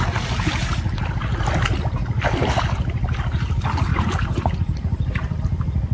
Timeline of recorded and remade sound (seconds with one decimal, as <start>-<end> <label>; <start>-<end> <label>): 0.0-3.9 recorded; 3.9-5.4 remade; 5.4-5.9 recorded